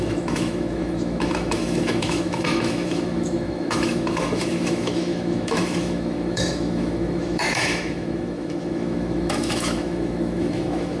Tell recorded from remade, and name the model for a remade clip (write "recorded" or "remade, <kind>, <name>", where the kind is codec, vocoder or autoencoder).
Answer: remade, autoencoder, DAC-VAE